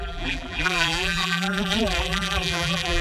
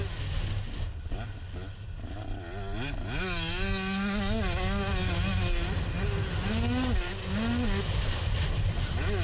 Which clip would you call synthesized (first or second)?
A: first